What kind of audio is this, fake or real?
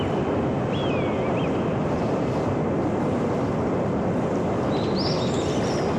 real